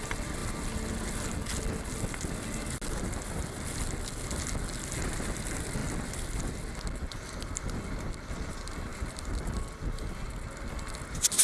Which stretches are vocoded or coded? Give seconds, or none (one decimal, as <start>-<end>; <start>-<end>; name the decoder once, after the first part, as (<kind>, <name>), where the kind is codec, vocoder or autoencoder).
none